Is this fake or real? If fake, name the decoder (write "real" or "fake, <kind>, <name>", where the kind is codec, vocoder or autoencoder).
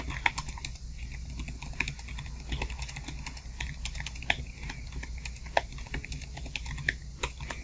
real